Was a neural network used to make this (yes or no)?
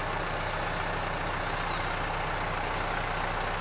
no